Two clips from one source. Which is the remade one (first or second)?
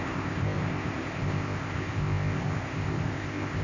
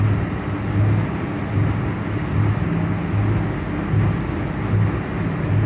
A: first